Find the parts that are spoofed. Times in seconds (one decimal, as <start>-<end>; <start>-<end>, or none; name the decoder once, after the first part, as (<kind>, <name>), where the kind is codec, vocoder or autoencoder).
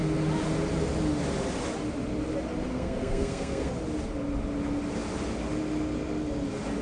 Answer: 2.7-3.7 (codec, SNAC)